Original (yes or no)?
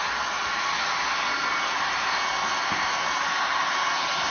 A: yes